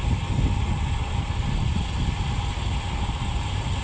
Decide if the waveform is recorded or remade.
recorded